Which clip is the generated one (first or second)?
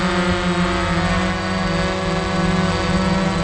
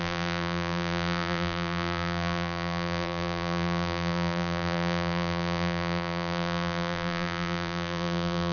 second